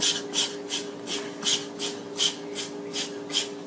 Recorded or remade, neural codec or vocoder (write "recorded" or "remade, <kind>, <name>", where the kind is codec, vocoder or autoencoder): recorded